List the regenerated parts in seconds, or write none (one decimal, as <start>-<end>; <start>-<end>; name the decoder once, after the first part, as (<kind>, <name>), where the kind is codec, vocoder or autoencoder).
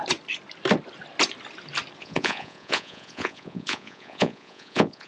2.0-5.1 (vocoder, Vocos)